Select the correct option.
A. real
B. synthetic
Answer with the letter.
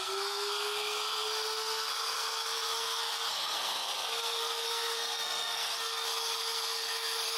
B